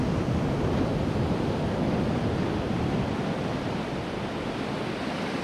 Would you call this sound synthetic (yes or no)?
no